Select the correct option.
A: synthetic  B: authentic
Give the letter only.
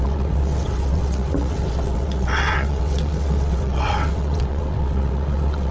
A